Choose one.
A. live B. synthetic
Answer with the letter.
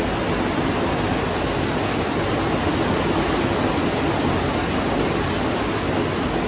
A